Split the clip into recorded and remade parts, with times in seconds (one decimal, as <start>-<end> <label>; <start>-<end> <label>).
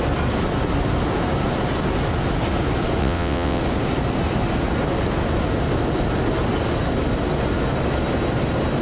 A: 0.0-3.0 recorded; 3.0-3.6 remade; 3.6-8.8 recorded